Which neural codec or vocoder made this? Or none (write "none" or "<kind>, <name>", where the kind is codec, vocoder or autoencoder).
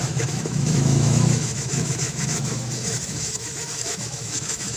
autoencoder, DAC-VAE